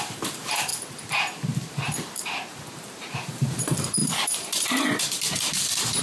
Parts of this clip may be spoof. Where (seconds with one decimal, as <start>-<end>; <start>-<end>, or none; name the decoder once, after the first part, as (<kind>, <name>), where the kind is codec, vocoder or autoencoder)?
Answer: 0.0-0.7 (vocoder, BigVGAN v2); 1.7-6.0